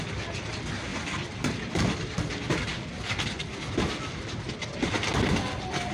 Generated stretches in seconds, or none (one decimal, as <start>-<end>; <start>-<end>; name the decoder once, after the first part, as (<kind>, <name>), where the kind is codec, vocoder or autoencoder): 0.9-2.3 (vocoder, BigVGAN v2)